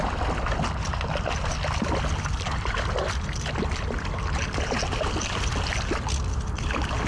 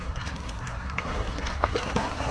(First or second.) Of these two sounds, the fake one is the second